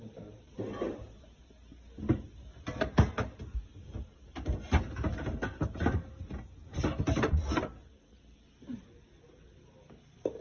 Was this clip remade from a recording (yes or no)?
no